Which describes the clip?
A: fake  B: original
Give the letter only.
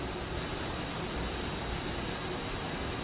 B